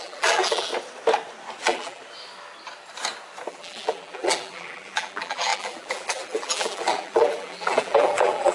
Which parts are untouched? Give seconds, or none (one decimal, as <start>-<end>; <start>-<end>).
0.7-1.6; 2.0-3.5